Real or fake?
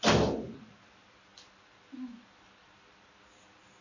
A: real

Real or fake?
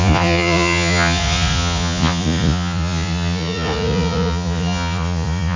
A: fake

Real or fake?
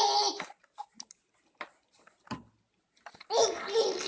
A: real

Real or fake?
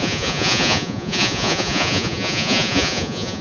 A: fake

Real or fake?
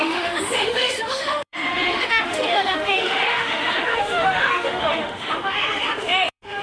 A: fake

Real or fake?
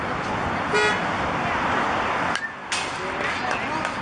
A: real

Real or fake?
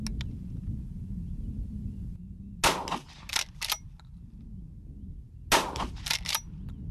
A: real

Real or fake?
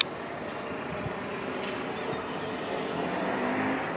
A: real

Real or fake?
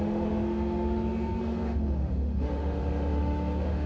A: fake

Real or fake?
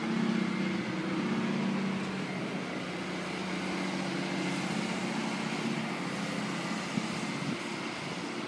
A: real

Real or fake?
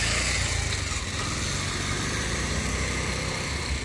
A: real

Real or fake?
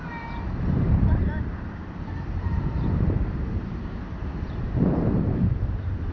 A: fake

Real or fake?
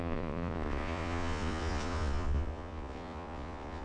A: fake